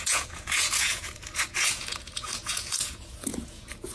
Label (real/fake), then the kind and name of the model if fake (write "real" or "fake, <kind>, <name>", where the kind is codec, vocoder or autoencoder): fake, vocoder, Vocos